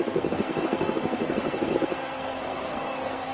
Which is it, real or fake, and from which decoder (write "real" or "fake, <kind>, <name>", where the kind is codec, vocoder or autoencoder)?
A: fake, codec, SNAC